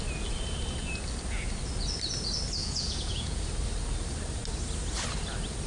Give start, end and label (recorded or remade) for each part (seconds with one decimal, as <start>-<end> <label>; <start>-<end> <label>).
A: 0.0-2.6 recorded; 2.6-3.4 remade; 3.4-5.7 recorded